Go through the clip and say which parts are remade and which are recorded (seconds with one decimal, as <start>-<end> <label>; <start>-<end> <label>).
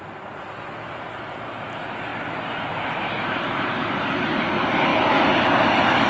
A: 0.0-6.1 recorded